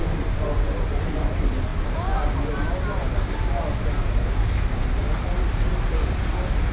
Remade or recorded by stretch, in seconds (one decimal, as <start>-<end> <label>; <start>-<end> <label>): 0.0-6.7 recorded